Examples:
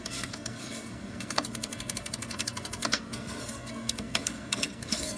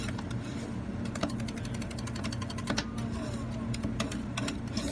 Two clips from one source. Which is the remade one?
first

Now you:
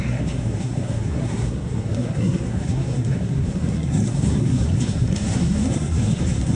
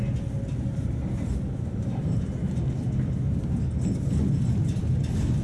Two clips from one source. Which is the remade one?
first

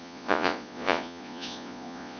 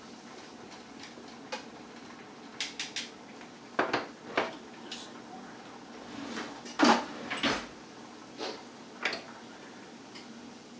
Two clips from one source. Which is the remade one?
first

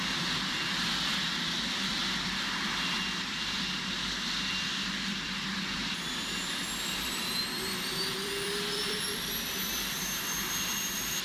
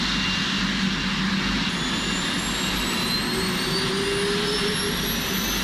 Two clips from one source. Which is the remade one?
first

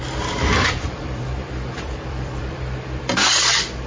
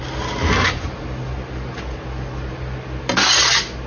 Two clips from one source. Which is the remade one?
first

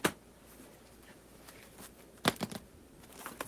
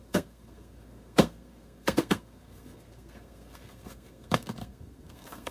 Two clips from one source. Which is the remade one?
second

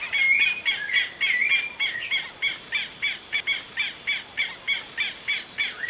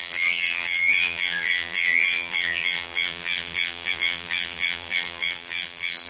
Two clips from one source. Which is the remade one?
second